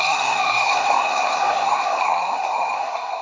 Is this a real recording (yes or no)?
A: no